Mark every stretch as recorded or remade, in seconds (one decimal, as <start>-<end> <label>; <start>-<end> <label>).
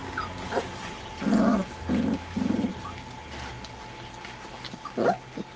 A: 0.0-1.5 recorded; 1.5-2.9 remade; 2.9-5.6 recorded